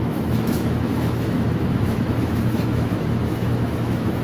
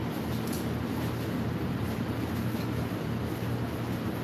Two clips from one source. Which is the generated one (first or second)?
first